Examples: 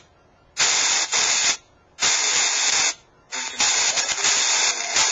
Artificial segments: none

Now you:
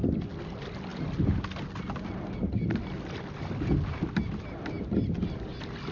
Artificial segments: none

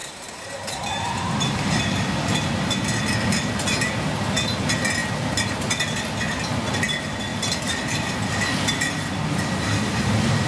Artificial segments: 0.0-1.8 (vocoder, BigVGAN v2)

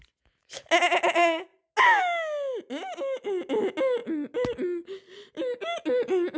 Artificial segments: none

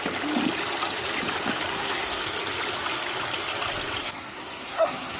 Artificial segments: 1.7-2.2 (codec, SNAC); 4.0-5.2